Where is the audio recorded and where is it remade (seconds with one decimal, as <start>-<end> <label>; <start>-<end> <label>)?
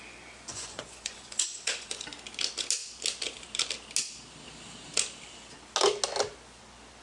0.0-0.5 recorded; 0.5-2.0 remade; 2.0-7.0 recorded